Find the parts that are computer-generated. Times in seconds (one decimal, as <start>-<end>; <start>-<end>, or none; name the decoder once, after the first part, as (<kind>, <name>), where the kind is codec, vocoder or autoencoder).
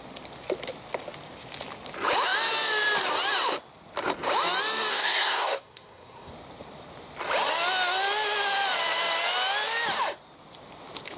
4.9-6.3 (codec, SNAC)